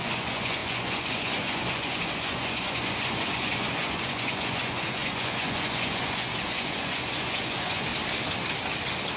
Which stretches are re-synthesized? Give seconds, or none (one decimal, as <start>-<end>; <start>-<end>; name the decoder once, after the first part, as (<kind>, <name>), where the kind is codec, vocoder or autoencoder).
0.0-7.9 (vocoder, Vocos)